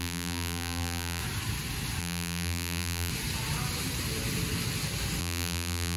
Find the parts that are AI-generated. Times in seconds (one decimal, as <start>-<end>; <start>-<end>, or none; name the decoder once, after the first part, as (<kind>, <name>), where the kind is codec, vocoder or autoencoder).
0.0-1.2 (vocoder, BigVGAN v2); 2.0-3.1; 5.2-6.0